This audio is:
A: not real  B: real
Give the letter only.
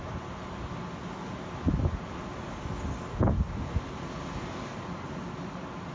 B